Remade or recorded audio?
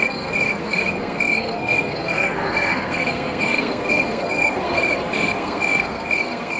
remade